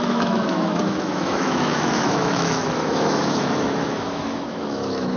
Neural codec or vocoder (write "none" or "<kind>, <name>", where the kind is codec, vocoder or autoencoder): autoencoder, DAC-VAE